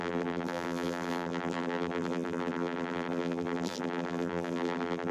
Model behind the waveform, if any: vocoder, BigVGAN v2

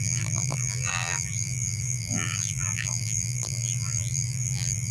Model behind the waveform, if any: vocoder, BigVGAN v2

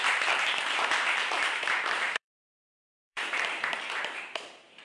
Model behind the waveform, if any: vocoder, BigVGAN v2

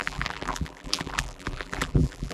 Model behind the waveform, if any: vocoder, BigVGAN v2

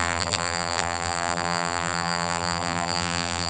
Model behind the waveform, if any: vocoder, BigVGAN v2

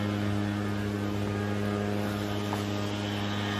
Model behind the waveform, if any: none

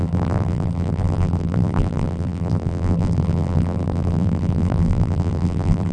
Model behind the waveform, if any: vocoder, BigVGAN v2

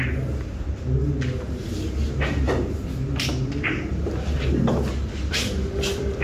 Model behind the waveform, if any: none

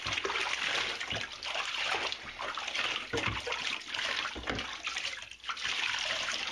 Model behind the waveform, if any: none